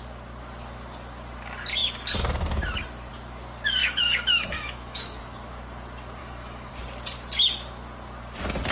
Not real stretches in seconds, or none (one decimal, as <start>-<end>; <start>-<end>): 3.8-5.2; 6.2-6.7